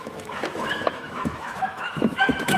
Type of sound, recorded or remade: remade